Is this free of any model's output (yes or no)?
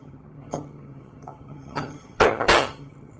no